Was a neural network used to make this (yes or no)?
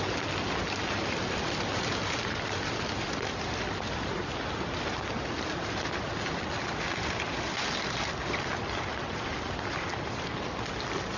no